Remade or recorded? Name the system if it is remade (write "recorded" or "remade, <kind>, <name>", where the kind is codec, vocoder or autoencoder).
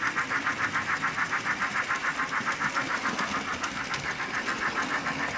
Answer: recorded